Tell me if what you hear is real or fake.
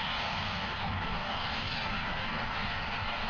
fake